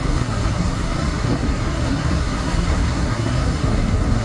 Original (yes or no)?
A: no